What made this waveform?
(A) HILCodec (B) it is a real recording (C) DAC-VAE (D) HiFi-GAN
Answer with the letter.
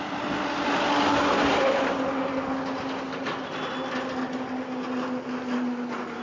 B